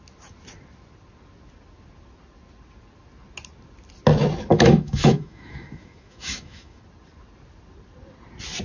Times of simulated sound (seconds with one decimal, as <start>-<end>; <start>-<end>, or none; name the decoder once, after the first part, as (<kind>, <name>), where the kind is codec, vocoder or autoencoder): 4.5-6.8 (autoencoder, DAC-VAE)